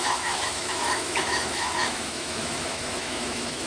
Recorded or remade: remade